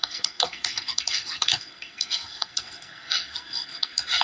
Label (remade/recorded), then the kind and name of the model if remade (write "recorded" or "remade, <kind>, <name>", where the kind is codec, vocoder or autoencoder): remade, codec, SNAC